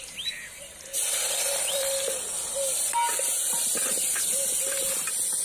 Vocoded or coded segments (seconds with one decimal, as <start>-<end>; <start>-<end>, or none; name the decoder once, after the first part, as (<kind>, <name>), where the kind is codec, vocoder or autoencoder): 0.0-0.9 (vocoder, BigVGAN v2); 1.6-2.3; 3.7-5.4